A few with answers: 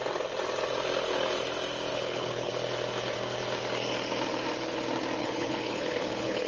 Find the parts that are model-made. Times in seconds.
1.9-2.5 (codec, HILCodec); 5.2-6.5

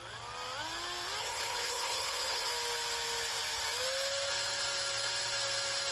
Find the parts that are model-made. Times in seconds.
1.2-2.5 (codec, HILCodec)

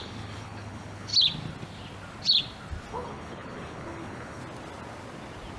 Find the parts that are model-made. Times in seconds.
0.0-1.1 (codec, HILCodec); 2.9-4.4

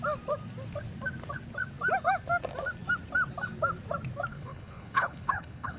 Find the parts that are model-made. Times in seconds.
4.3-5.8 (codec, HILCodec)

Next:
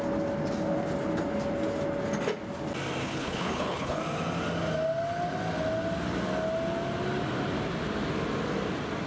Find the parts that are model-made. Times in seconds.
3.0-4.0 (codec, HILCodec)

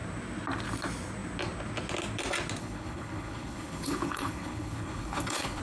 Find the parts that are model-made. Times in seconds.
2.6-5.6 (codec, HILCodec)